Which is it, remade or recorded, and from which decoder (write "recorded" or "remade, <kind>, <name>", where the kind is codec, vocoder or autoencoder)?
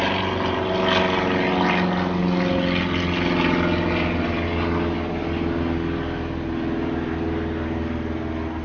recorded